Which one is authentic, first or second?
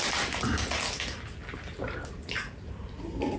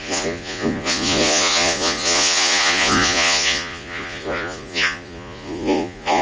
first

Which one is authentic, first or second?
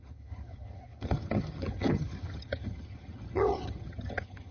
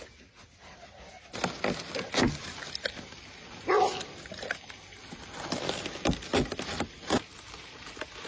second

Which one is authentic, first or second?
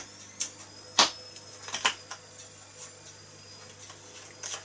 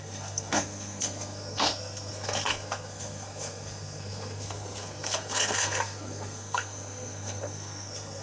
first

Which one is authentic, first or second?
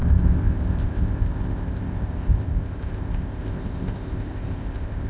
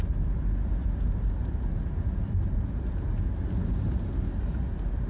second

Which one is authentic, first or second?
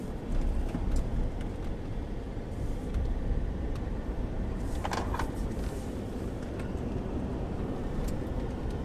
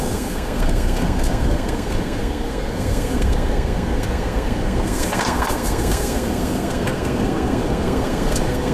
first